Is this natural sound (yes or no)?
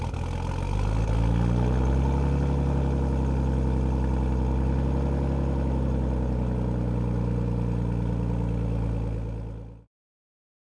yes